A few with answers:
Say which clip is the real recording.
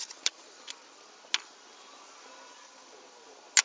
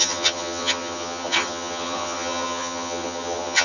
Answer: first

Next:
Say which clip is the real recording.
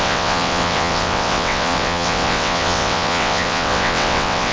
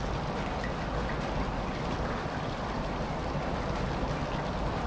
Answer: second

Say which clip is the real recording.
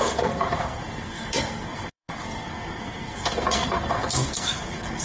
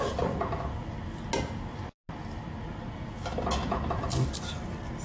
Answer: second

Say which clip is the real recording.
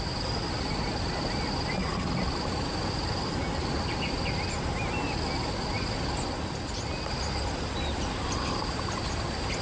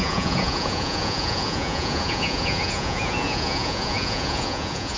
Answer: first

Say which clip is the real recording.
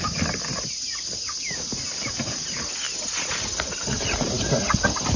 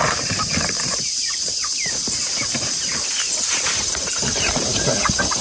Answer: first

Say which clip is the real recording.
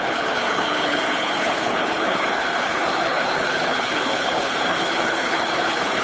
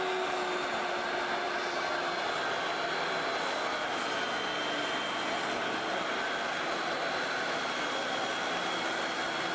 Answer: second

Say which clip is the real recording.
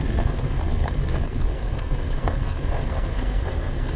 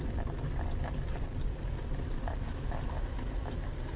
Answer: second